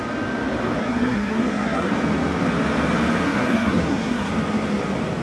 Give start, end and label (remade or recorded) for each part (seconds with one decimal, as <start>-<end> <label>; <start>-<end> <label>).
0.0-0.8 recorded; 0.8-1.9 remade; 1.9-3.2 recorded; 3.2-4.3 remade; 4.3-5.2 recorded